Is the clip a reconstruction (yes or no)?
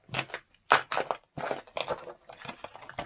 no